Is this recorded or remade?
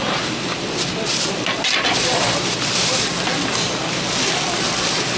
recorded